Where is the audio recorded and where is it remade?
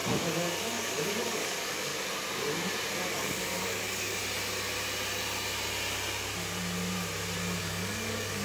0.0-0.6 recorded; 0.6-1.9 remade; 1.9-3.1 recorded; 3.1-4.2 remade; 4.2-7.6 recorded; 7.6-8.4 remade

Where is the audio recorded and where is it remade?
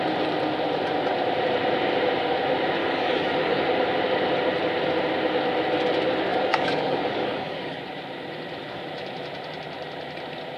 0.0-2.8 recorded; 2.8-3.6 remade; 3.6-6.3 recorded; 6.3-7.8 remade; 7.8-10.6 recorded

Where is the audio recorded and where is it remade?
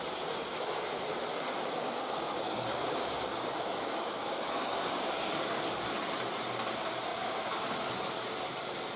0.0-1.3 recorded; 1.3-5.6 remade; 5.6-7.1 recorded; 7.1-7.6 remade; 7.6-9.0 recorded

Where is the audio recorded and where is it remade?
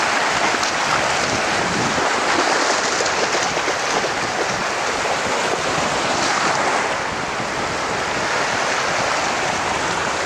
0.0-10.3 recorded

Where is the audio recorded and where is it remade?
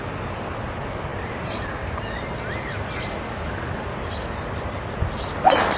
0.0-5.8 recorded